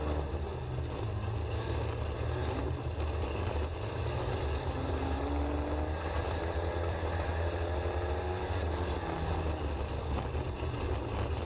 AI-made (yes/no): no